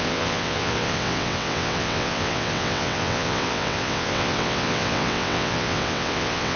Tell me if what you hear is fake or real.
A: fake